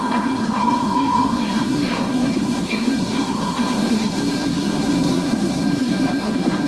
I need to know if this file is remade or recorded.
remade